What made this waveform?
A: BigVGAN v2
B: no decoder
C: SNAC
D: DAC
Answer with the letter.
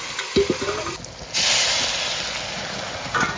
B